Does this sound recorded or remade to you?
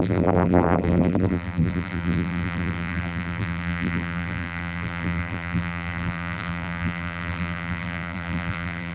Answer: remade